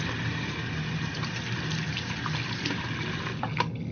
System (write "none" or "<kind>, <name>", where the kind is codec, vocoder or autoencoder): none